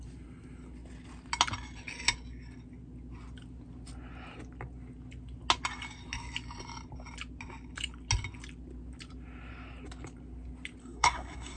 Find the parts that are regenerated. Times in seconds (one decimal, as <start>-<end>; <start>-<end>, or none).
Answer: 10.8-11.6